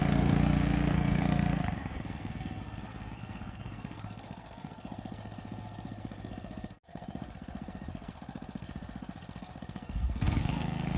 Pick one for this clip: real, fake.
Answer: fake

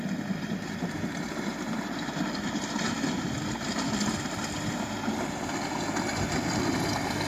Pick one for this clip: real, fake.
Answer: fake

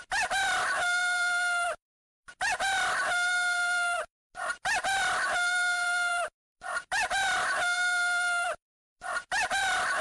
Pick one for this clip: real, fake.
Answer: fake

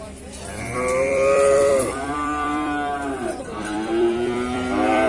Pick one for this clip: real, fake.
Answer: fake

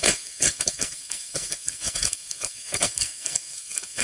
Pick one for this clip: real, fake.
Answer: fake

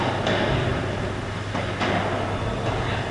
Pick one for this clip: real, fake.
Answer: real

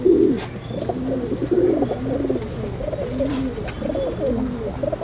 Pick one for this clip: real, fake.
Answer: real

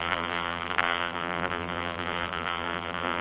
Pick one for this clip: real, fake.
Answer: fake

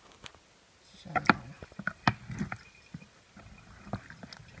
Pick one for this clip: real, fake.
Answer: real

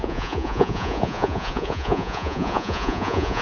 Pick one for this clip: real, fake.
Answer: fake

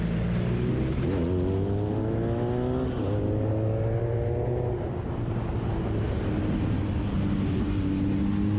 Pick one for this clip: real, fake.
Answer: real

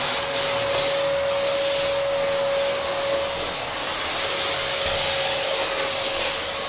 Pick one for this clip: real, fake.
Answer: real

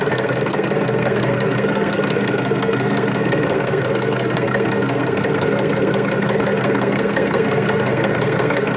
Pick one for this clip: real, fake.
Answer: fake